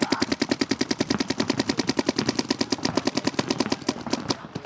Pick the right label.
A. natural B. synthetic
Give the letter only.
B